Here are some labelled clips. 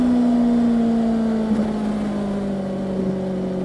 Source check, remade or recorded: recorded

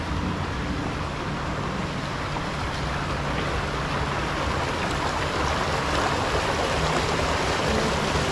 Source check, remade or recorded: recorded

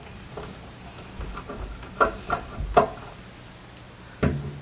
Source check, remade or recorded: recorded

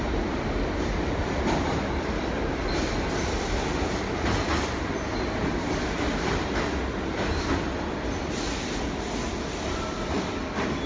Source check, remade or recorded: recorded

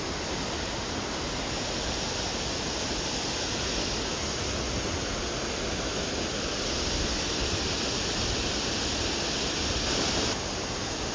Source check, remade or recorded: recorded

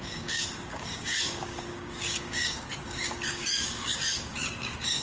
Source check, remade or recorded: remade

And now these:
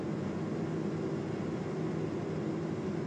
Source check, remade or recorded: recorded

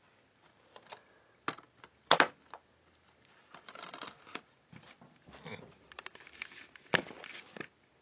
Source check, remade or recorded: recorded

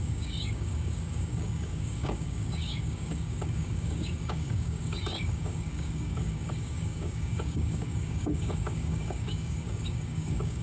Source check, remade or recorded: remade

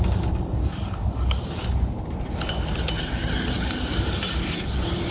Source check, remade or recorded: recorded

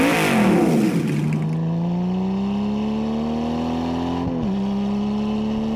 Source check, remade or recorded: recorded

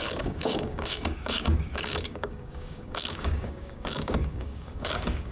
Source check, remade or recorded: remade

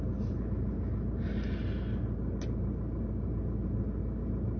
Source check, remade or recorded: recorded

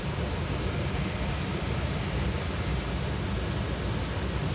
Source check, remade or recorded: recorded